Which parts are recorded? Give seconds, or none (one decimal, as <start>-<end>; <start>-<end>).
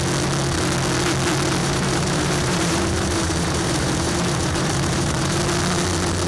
0.0-1.6; 5.4-6.3